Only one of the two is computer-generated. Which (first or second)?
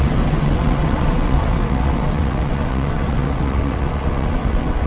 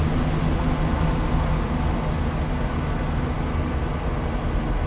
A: first